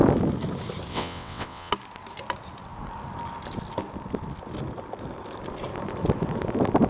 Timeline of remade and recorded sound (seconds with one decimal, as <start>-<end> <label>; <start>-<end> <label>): 0.0-0.9 recorded; 0.9-1.7 remade; 1.7-6.9 recorded